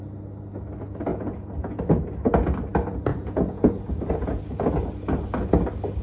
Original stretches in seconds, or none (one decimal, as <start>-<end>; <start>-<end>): 0.0-1.1; 1.8-3.1; 4.4-6.0